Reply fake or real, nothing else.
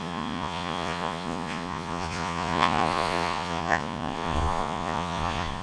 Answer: fake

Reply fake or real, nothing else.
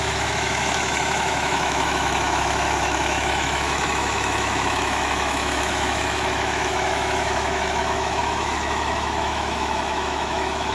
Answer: fake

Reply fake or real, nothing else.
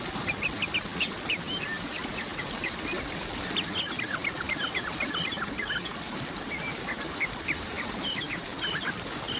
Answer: real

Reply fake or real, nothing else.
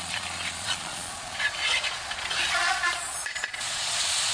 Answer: fake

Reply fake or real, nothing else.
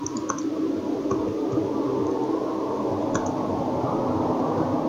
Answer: real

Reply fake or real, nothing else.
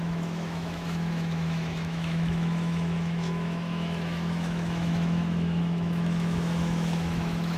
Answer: fake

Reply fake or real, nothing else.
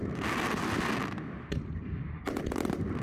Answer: real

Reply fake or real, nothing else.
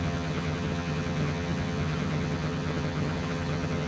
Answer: fake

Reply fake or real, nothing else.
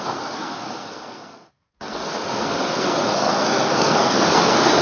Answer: fake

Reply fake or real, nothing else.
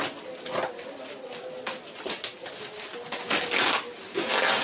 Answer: real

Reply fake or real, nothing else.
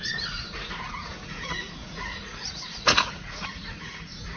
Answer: fake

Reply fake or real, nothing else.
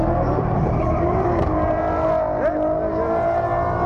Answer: real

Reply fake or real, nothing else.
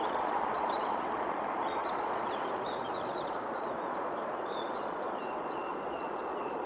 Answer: fake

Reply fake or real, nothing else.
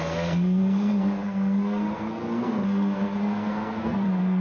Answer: fake